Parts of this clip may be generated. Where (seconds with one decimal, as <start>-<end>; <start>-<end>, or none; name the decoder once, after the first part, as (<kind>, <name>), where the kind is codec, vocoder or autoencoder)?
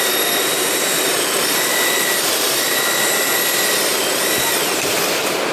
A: 0.5-3.1 (vocoder, BigVGAN v2); 3.9-5.5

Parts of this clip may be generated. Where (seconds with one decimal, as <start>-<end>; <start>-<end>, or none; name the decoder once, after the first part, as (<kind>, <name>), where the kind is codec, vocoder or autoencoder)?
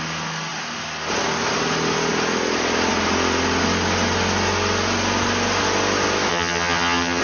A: 6.3-7.2 (vocoder, HiFi-GAN)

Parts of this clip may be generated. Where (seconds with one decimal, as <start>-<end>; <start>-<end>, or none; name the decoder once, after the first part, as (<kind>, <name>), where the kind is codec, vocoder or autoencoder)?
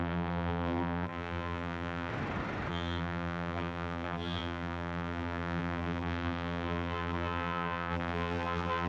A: 0.0-2.1 (vocoder, BigVGAN v2); 2.7-8.9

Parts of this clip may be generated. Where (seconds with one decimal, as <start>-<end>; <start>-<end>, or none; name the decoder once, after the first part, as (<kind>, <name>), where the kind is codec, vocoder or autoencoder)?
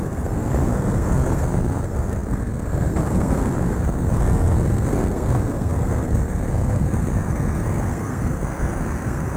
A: 0.0-9.4 (codec, SNAC)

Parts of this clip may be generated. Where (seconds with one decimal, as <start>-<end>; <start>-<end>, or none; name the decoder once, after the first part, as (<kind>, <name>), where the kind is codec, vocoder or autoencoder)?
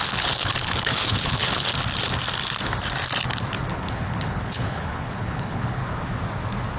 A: 0.0-1.7 (codec, HILCodec); 3.7-5.8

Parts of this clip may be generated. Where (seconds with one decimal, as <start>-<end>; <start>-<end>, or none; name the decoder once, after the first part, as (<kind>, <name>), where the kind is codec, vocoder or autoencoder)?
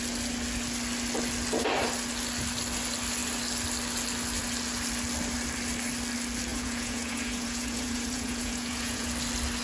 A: 6.5-9.1 (vocoder, Vocos)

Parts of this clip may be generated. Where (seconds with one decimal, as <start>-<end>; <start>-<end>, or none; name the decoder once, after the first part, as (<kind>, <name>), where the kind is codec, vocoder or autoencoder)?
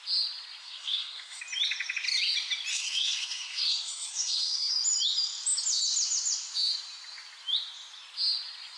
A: 0.6-1.4 (codec, SNAC); 2.7-4.7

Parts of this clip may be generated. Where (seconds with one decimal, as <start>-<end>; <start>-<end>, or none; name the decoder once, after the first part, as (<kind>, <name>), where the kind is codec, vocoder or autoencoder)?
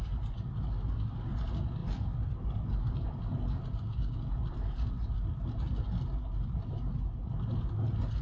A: none